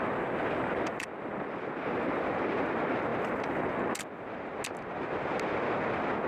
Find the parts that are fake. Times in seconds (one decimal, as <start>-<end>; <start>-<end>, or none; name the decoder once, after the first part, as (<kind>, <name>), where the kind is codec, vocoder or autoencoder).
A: none